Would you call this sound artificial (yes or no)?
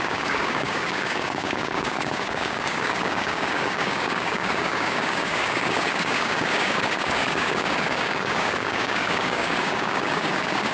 yes